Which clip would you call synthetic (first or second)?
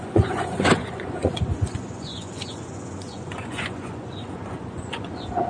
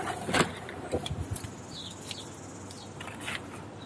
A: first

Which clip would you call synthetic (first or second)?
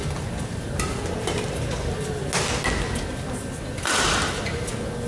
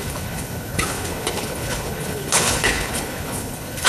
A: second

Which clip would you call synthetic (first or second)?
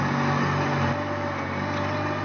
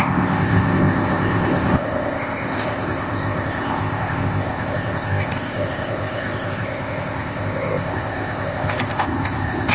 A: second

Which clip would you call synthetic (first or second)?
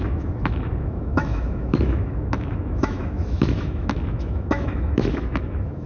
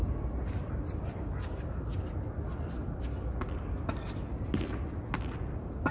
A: first